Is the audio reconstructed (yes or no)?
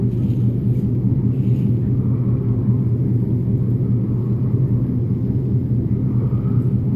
no